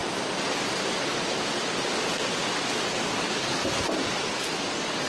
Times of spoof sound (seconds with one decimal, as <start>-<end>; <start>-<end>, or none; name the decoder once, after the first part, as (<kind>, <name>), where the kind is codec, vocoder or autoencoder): 2.9-3.6 (codec, DAC); 4.1-5.1